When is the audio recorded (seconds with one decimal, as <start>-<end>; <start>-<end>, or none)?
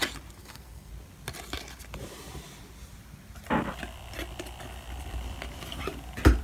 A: 0.0-0.4; 0.9-6.4